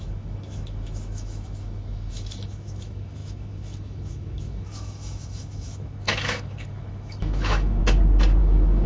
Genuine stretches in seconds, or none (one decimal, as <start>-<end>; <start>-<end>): 7.8-8.4